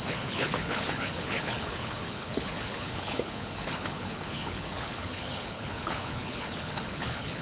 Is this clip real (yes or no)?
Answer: no